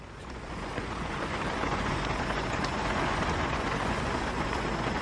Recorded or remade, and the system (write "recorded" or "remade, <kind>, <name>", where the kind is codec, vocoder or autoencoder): remade, vocoder, Vocos